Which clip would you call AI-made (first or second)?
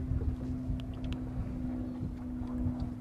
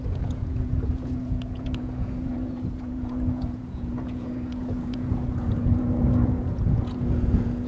second